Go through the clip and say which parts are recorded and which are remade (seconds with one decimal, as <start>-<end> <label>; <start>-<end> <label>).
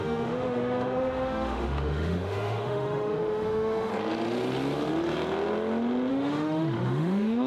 0.0-3.9 remade; 3.9-6.1 recorded; 6.1-7.5 remade